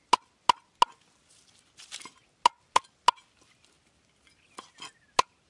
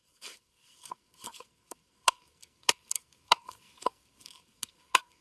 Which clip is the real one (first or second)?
first